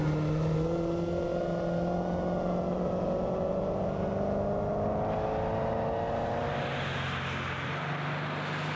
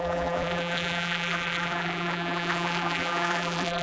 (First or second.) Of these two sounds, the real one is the first